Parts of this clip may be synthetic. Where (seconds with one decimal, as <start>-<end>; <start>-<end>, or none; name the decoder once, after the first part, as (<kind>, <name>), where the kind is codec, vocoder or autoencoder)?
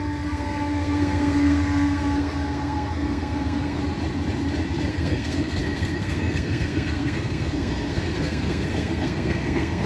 0.0-3.8 (codec, SNAC); 4.9-9.9